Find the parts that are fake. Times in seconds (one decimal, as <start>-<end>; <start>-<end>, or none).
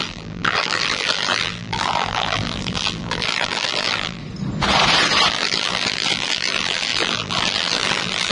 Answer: 0.0-4.2; 5.3-8.3